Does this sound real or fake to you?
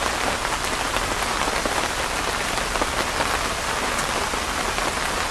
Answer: real